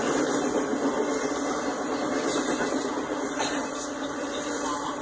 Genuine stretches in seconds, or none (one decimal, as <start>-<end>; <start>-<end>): 0.0-5.0